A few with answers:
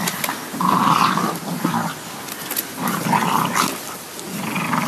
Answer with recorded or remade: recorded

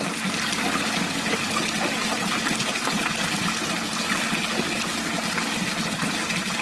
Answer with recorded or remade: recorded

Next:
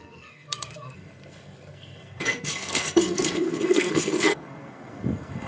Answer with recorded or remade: remade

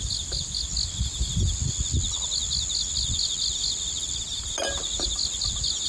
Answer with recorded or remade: recorded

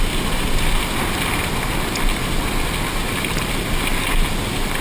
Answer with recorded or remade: recorded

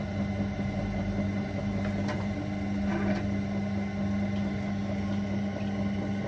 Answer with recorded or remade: recorded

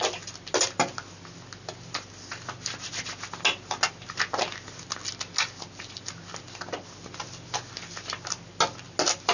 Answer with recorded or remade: recorded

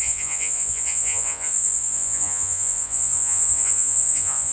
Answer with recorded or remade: remade